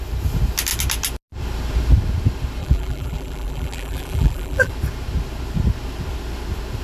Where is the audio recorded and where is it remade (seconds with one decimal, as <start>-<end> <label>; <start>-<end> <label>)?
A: 0.0-2.6 recorded; 2.6-4.7 remade; 4.7-6.8 recorded